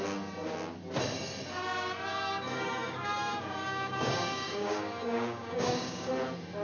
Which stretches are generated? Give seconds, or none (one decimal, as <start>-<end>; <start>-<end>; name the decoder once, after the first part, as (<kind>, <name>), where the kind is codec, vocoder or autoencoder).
2.1-6.1 (codec, DAC)